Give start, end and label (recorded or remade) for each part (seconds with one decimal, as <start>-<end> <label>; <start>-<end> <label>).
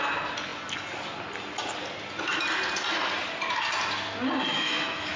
0.0-4.5 recorded; 4.5-5.2 remade